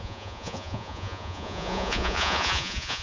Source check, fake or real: fake